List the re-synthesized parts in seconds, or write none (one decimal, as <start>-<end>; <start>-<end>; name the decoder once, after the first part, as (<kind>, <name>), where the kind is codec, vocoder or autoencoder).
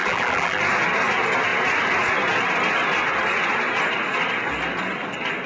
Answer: 0.0-0.6 (vocoder, BigVGAN v2)